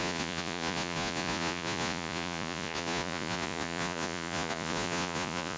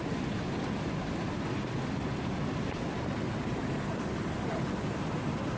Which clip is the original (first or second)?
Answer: second